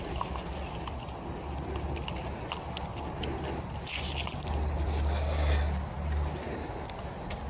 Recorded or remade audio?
recorded